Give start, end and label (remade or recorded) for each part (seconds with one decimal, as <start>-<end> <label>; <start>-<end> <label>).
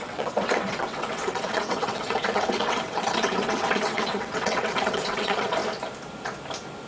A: 0.0-5.6 remade; 5.6-6.9 recorded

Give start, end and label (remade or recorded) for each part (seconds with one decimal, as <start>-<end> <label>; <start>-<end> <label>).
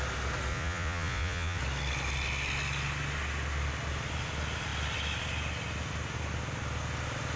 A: 0.0-0.5 recorded; 0.5-1.6 remade; 1.6-7.4 recorded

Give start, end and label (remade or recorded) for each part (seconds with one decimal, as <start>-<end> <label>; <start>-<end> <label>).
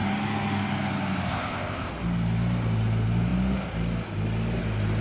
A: 0.0-1.3 recorded; 1.3-1.9 remade; 1.9-5.0 recorded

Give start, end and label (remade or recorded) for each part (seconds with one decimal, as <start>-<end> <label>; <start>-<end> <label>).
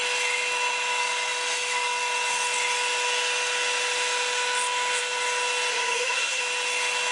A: 0.0-5.7 recorded; 5.7-6.4 remade; 6.4-7.1 recorded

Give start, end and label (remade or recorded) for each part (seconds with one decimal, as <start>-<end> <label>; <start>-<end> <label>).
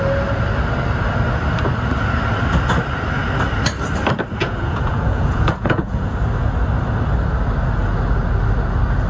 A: 0.0-4.4 recorded; 4.4-6.1 remade; 6.1-9.1 recorded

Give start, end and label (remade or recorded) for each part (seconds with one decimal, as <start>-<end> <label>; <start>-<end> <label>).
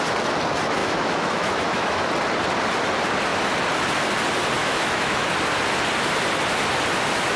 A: 0.0-0.8 recorded; 0.8-2.1 remade; 2.1-4.6 recorded; 4.6-5.3 remade; 5.3-7.4 recorded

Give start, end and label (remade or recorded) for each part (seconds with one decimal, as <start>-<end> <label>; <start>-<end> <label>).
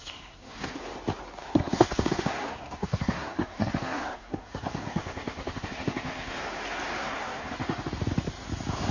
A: 0.0-0.8 remade; 0.8-1.4 recorded; 1.4-6.4 remade; 6.4-7.0 recorded; 7.0-7.5 remade; 7.5-8.9 recorded